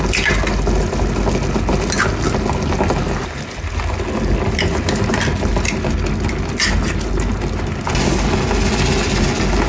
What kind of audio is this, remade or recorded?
recorded